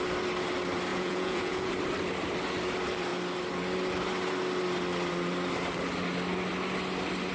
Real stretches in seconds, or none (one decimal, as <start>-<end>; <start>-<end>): 0.0-0.9; 1.7-7.3